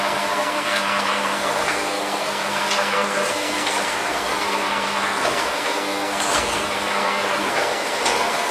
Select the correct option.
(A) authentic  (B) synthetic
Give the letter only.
B